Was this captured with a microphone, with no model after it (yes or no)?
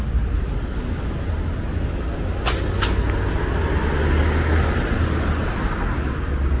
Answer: yes